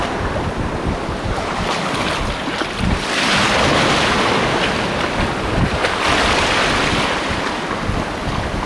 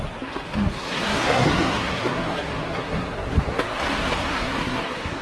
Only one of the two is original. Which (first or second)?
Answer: first